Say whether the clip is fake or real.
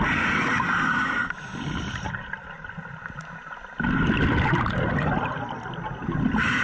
real